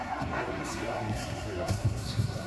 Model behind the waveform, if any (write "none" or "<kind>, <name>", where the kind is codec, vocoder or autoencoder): codec, SNAC